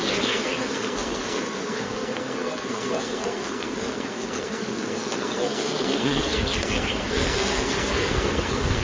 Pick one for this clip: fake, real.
fake